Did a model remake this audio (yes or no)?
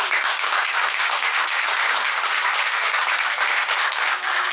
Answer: yes